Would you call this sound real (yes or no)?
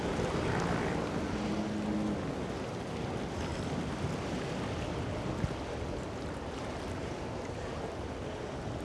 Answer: yes